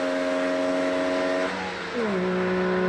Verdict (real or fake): real